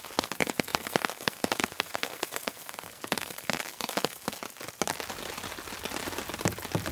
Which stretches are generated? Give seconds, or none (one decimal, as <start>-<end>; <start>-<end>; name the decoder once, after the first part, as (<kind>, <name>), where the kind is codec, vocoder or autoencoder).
0.0-4.4 (codec, SNAC)